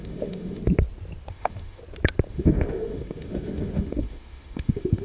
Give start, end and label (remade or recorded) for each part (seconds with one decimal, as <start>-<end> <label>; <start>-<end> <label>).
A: 0.0-0.6 remade; 0.6-1.3 recorded; 1.3-1.8 remade; 1.8-2.3 recorded; 2.3-5.0 remade